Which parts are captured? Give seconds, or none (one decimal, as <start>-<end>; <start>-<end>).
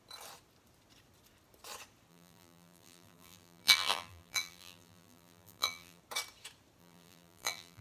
0.0-2.1; 6.0-6.8